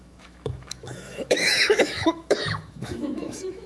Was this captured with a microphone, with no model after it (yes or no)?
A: no